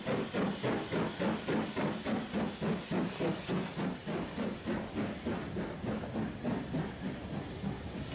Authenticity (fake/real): real